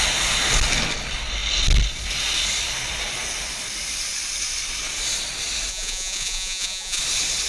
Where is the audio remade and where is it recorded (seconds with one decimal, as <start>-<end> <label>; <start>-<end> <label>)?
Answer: 0.0-5.7 recorded; 5.7-7.0 remade; 7.0-7.5 recorded